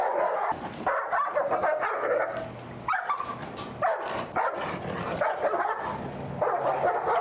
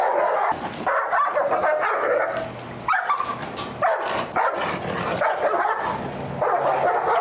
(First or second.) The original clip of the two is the second